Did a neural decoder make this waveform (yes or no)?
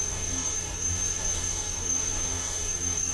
yes